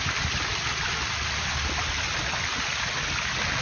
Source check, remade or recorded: recorded